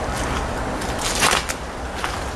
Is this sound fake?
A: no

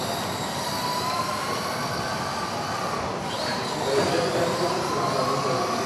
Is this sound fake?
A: no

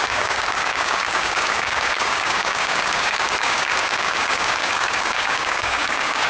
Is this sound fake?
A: yes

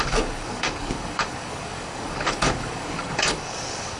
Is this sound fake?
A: yes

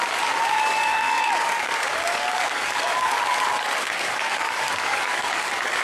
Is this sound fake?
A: yes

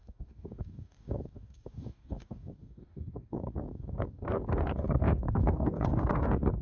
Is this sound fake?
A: yes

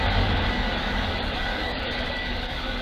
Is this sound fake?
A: yes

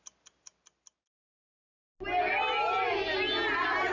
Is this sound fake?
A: no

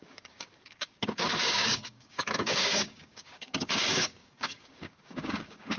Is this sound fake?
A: yes